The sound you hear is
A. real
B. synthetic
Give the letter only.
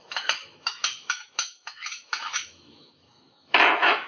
B